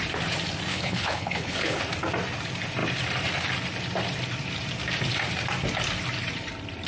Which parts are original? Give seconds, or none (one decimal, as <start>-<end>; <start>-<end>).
0.0-0.7; 1.8-6.9